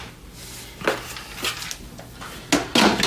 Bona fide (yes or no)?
yes